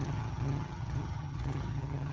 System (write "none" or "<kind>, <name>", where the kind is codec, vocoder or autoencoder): vocoder, HiFi-GAN